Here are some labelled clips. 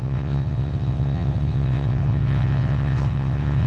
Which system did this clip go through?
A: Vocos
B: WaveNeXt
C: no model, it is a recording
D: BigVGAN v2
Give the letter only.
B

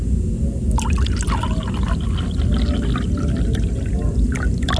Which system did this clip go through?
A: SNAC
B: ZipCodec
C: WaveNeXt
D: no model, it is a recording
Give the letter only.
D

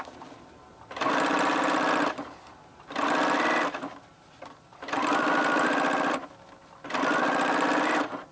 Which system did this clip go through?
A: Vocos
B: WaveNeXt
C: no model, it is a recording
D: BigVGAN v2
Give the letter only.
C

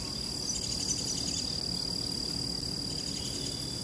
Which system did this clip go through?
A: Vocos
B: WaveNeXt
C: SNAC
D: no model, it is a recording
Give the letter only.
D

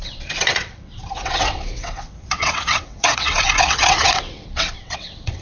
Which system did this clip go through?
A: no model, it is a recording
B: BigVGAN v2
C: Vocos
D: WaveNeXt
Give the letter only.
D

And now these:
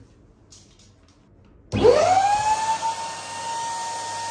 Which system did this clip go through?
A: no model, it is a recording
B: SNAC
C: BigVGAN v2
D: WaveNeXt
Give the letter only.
A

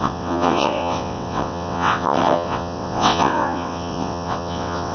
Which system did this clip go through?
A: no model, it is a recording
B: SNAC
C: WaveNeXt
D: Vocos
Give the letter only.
C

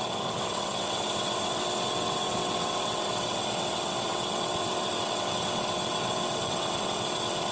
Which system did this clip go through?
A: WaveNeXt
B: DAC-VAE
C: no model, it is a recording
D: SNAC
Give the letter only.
A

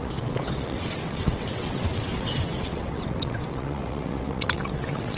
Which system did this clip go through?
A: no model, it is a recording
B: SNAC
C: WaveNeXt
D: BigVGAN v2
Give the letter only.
C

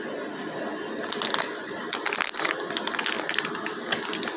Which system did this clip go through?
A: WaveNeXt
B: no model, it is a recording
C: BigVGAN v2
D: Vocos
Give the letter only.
B